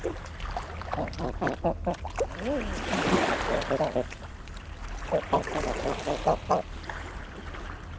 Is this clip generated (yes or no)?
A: yes